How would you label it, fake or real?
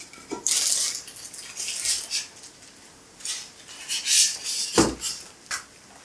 real